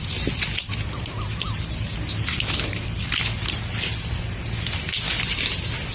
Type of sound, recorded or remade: recorded